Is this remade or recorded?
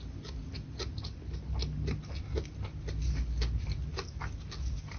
recorded